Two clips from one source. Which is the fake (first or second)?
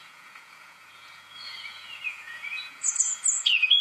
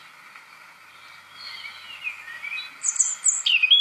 first